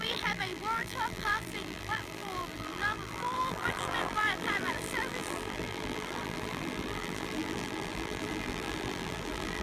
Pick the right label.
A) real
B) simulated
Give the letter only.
B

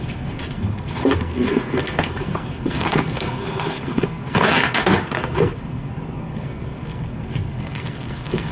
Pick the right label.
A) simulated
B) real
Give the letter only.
A